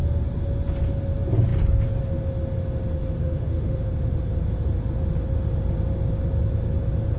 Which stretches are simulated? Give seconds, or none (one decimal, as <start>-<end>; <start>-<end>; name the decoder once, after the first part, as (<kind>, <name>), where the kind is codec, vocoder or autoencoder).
3.2-3.9 (autoencoder, DAC-VAE)